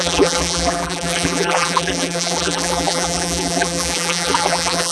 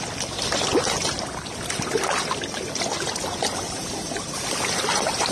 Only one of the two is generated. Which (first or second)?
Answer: first